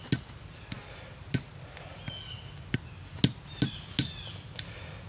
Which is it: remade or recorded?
recorded